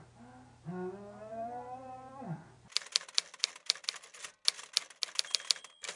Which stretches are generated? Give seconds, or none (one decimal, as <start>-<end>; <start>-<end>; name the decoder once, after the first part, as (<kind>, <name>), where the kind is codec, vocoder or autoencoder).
1.3-4.4 (vocoder, BigVGAN v2)